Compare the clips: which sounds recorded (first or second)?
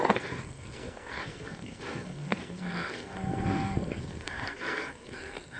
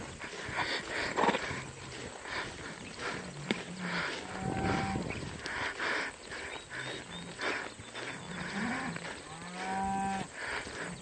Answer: second